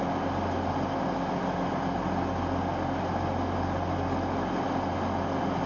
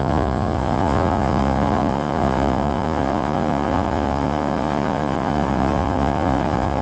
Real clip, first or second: first